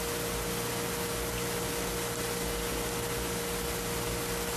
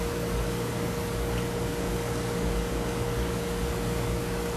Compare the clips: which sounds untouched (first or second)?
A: first